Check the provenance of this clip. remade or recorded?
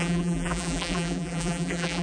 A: remade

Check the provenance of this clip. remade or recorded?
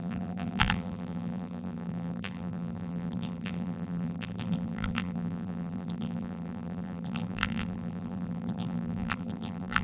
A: remade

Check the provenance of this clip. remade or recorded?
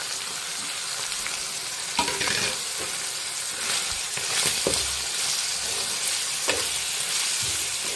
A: recorded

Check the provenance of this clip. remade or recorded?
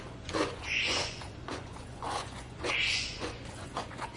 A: remade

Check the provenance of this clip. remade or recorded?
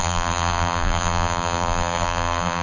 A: remade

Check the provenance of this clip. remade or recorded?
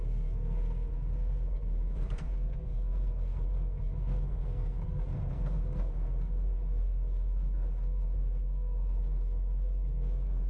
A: remade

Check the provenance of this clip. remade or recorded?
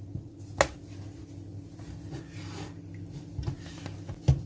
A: recorded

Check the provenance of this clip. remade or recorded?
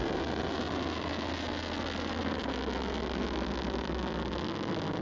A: recorded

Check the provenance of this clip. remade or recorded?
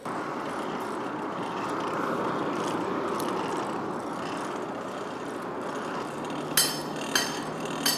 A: recorded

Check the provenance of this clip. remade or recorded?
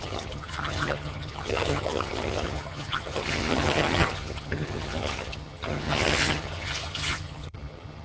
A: remade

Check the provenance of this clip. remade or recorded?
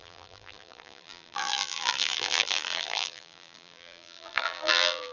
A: remade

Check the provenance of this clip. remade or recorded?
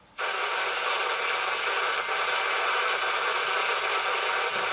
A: recorded